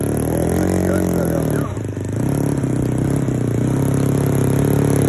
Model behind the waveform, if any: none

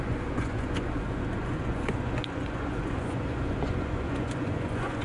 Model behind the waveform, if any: vocoder, Vocos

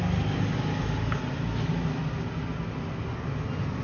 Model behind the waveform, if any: none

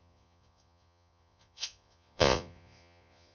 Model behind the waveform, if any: vocoder, Vocos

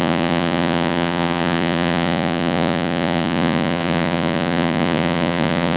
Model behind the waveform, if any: vocoder, Vocos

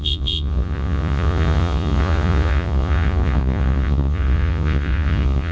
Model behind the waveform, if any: vocoder, Vocos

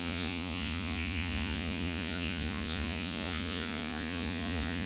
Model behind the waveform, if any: vocoder, Vocos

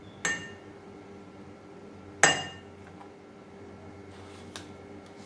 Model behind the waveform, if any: none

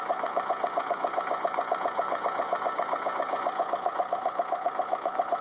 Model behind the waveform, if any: vocoder, Vocos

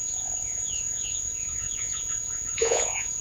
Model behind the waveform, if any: vocoder, Vocos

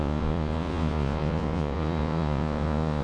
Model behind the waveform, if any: vocoder, Vocos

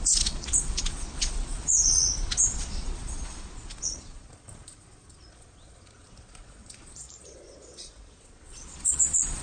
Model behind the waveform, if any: vocoder, Vocos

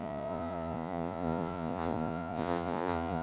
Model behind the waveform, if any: vocoder, Vocos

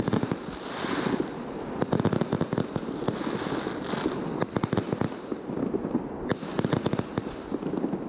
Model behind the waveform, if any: none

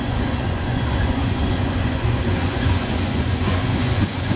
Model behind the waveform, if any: vocoder, Vocos